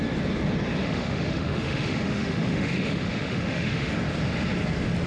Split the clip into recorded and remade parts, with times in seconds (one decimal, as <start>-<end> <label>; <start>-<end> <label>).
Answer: 0.0-0.8 recorded; 0.8-3.9 remade; 3.9-5.1 recorded